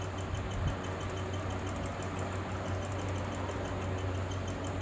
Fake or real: real